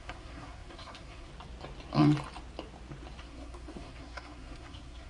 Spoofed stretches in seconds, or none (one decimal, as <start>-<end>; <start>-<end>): 0.0-1.3; 3.2-5.1